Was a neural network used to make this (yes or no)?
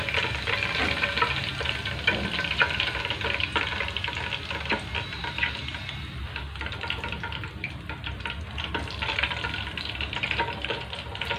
no